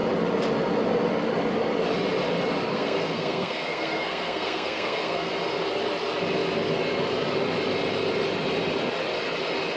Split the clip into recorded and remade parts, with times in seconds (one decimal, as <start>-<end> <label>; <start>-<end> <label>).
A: 0.0-2.7 recorded; 2.7-5.3 remade; 5.3-9.8 recorded

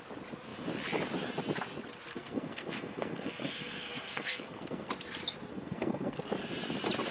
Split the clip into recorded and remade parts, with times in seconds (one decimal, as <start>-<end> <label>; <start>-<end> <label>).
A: 0.0-2.1 recorded; 2.1-4.9 remade; 4.9-5.5 recorded; 5.5-6.2 remade; 6.2-7.1 recorded